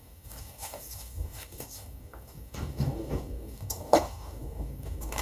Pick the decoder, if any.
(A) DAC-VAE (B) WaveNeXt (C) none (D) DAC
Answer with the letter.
D